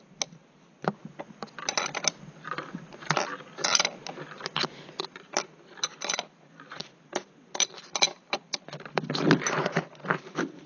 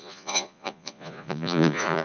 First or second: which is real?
first